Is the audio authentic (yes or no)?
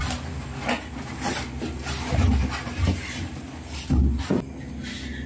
yes